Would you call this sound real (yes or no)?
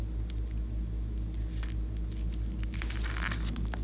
yes